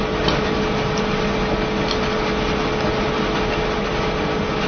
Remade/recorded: recorded